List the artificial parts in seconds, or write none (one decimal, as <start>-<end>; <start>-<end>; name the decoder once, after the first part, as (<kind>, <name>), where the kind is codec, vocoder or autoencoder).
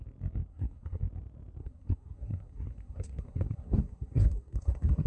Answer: 0.5-1.0 (codec, SNAC); 1.6-5.1